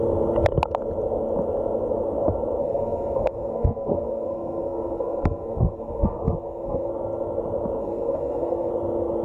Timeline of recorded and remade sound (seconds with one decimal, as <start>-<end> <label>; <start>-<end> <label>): 0.0-2.6 recorded; 2.6-6.9 remade; 6.9-7.8 recorded; 7.8-8.7 remade; 8.7-9.2 recorded